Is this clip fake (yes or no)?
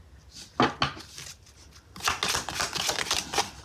no